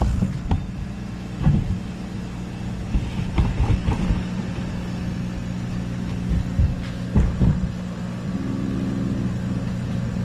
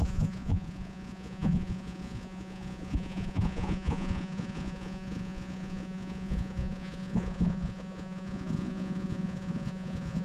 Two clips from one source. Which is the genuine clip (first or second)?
first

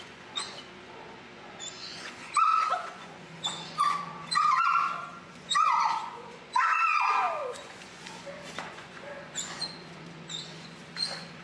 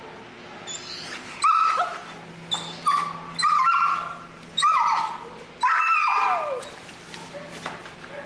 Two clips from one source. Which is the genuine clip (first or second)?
second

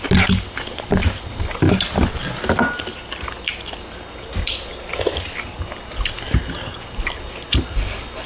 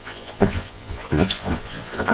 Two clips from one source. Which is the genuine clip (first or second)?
first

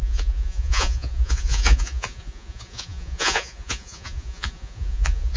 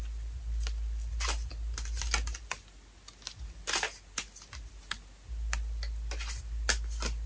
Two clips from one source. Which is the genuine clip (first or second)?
second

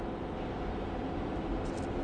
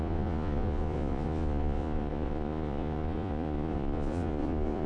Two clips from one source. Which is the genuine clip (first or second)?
first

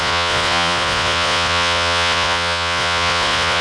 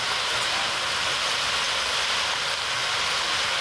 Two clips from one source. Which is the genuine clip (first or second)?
second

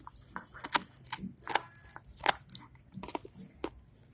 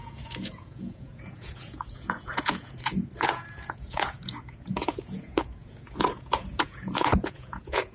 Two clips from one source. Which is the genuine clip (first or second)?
first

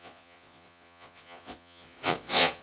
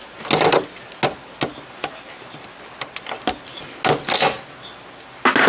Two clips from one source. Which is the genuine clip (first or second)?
second